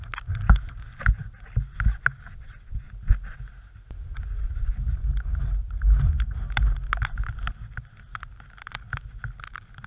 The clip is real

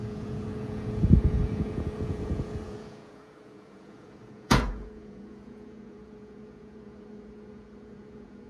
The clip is fake